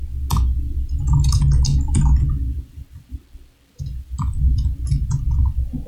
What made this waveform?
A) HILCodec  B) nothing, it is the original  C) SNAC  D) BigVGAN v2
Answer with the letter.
B